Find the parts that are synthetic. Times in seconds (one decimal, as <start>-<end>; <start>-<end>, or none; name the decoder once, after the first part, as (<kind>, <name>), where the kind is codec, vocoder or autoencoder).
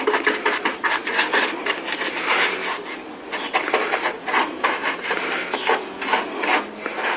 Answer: none